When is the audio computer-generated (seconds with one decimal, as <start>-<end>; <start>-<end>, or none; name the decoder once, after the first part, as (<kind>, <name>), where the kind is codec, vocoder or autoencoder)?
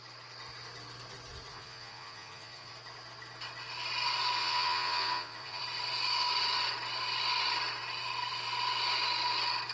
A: 1.5-2.7 (vocoder, Vocos); 4.4-5.6